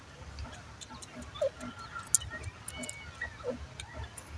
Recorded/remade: recorded